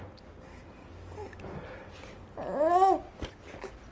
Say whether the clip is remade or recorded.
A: recorded